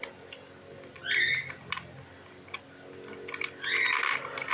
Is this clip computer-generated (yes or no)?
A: no